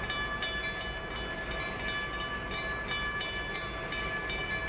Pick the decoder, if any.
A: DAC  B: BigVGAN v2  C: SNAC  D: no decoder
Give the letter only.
D